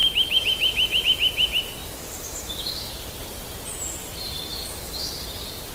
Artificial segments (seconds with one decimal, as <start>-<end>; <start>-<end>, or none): 0.0-1.0; 1.8-2.9; 4.5-5.2